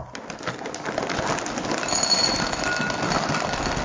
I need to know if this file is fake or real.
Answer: real